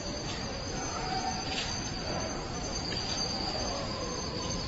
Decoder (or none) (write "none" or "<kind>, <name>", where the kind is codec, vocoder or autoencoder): none